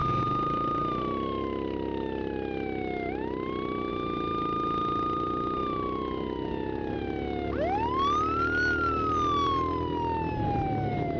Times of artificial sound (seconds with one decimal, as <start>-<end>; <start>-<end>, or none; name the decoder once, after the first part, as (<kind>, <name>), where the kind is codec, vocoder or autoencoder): none